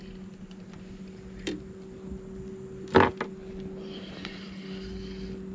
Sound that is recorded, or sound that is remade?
recorded